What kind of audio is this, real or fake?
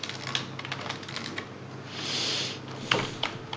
real